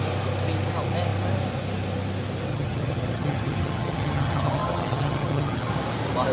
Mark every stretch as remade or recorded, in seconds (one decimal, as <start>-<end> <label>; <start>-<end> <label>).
0.0-2.5 recorded; 2.5-5.7 remade; 5.7-6.3 recorded